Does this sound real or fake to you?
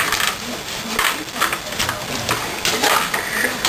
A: real